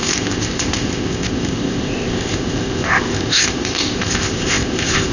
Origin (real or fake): fake